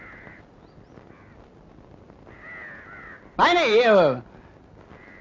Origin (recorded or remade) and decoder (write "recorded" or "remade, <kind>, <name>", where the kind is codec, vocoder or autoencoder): recorded